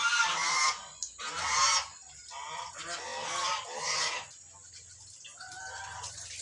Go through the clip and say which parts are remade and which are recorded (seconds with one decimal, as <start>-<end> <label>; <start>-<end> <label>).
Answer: 0.0-6.4 recorded